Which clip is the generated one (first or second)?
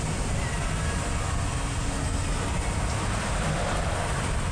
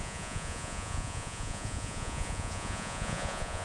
second